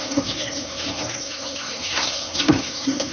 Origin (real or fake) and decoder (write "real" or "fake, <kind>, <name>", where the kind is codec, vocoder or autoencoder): fake, codec, SNAC